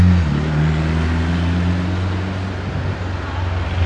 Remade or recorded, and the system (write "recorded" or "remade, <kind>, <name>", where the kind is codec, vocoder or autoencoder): recorded